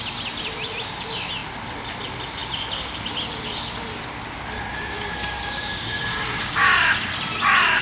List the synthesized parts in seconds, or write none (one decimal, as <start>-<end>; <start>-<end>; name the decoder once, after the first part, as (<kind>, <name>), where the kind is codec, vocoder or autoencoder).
4.7-6.7 (codec, DAC)